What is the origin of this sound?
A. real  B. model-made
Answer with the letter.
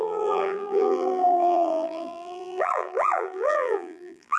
B